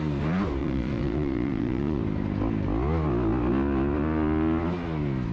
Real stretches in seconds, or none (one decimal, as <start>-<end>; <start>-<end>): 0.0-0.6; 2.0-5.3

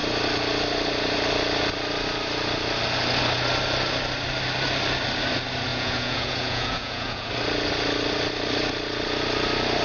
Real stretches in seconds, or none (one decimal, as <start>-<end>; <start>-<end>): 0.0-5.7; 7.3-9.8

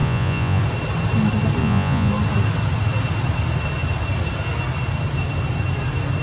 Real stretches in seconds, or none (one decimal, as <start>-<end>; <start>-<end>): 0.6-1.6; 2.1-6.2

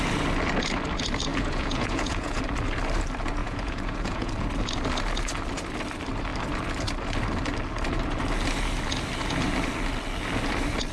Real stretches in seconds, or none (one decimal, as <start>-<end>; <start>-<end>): 0.0-1.3; 2.4-3.4; 4.3-10.9

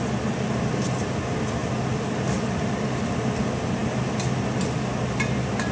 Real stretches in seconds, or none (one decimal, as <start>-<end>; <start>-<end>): 0.0-5.7